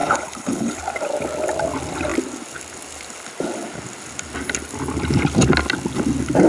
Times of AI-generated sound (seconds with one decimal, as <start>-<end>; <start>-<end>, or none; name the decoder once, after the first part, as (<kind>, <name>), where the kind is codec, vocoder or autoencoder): 0.0-0.8 (codec, HILCodec)